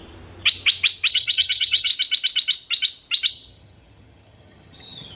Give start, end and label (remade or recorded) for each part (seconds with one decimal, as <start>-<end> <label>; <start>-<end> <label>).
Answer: 0.0-1.1 recorded; 1.1-1.9 remade; 1.9-3.3 recorded; 3.3-5.2 remade